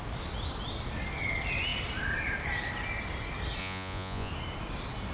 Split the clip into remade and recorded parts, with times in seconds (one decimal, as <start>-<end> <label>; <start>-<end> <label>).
0.0-3.6 recorded; 3.6-4.3 remade; 4.3-5.1 recorded